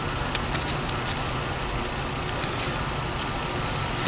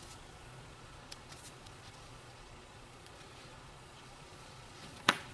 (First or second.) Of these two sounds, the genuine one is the first